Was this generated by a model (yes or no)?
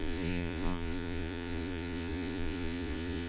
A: yes